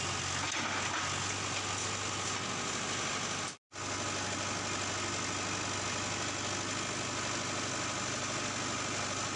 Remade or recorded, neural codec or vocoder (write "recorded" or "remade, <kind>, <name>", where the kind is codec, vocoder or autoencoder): recorded